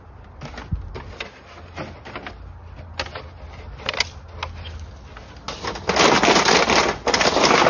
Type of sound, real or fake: real